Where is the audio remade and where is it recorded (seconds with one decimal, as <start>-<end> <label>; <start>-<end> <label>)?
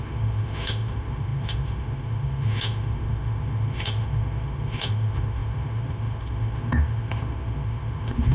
0.0-8.3 remade